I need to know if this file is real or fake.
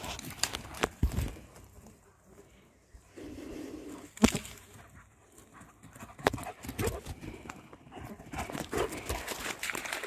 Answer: real